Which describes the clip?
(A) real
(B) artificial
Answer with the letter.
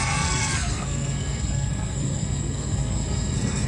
B